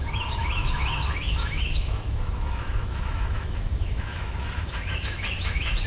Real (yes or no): no